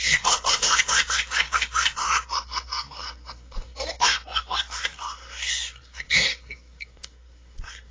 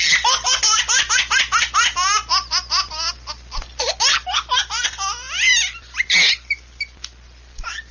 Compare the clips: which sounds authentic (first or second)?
second